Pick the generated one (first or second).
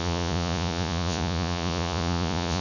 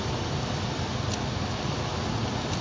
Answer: first